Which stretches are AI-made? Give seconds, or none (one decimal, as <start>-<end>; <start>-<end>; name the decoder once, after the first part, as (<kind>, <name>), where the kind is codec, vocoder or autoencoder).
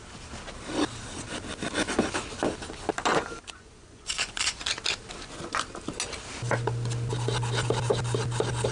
3.1-4.6 (vocoder, Vocos)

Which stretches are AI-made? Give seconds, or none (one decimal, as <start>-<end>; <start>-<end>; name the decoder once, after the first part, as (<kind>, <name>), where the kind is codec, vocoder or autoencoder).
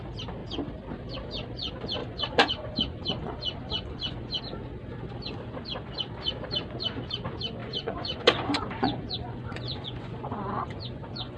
2.0-4.4 (vocoder, Vocos); 7.6-11.4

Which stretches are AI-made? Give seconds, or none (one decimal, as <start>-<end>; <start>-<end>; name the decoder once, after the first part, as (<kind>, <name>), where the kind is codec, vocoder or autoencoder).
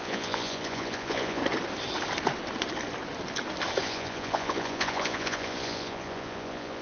0.0-1.4 (vocoder, Vocos); 3.8-6.8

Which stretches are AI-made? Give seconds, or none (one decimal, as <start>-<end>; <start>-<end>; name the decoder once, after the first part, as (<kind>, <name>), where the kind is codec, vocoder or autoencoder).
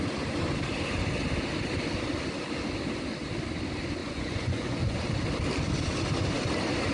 4.0-5.0 (vocoder, Vocos)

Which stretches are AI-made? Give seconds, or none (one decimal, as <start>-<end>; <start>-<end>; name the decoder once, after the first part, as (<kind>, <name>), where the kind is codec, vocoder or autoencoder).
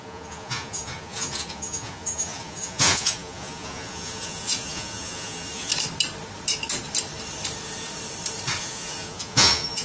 0.0-5.7 (vocoder, Vocos); 8.6-9.8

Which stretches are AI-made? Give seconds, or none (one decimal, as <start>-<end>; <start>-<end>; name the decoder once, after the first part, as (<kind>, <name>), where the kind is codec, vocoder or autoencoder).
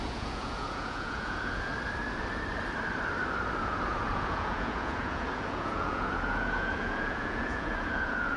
0.0-1.7 (vocoder, Vocos); 3.6-8.4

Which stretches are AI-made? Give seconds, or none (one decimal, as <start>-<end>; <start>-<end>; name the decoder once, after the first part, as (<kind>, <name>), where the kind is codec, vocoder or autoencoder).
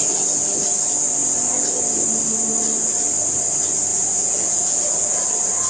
3.9-5.3 (vocoder, Vocos)